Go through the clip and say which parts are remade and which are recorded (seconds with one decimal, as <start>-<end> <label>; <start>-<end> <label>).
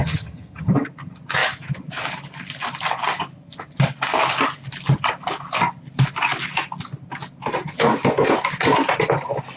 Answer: 0.0-0.7 remade; 0.7-9.6 recorded